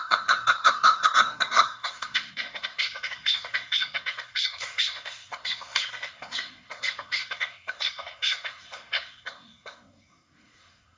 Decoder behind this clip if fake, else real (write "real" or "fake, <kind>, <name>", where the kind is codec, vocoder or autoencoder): fake, codec, SNAC